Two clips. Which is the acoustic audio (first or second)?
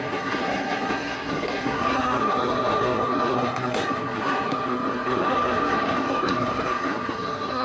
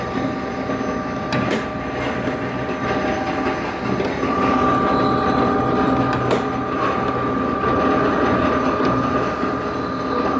second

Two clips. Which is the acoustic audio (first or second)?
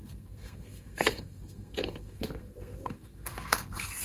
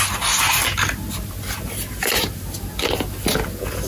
second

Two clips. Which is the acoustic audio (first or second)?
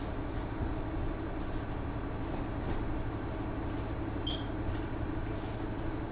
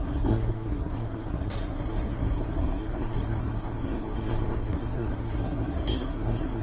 first